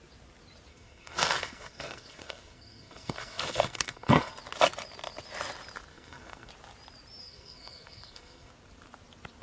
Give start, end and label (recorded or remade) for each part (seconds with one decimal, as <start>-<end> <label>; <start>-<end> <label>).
0.0-0.7 recorded; 0.7-4.3 remade; 4.3-5.9 recorded; 5.9-6.5 remade; 6.5-7.2 recorded; 7.2-8.5 remade; 8.5-9.4 recorded